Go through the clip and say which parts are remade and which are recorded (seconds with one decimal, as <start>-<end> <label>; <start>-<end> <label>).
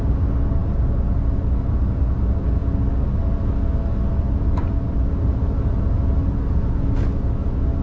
0.0-7.8 recorded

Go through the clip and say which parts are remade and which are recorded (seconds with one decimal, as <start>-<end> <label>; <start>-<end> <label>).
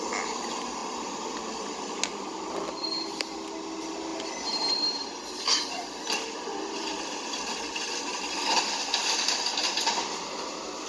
0.0-10.9 recorded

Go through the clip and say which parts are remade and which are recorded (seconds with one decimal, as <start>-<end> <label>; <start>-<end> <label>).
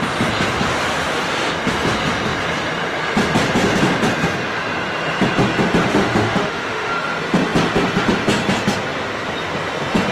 0.0-5.9 recorded; 5.9-6.9 remade; 6.9-10.1 recorded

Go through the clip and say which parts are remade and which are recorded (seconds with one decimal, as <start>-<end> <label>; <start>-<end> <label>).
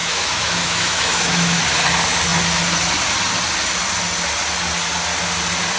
0.0-1.6 remade; 1.6-5.8 recorded